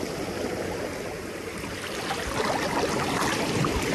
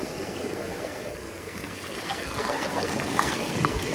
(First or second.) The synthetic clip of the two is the second